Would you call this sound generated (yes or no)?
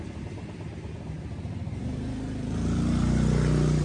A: no